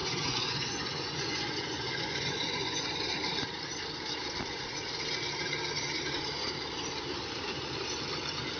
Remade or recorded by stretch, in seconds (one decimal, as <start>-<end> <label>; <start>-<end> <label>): 0.0-3.0 remade; 3.0-8.6 recorded